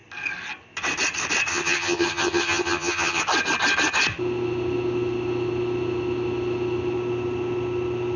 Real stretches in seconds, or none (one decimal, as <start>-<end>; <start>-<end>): 0.0-1.5; 3.2-8.2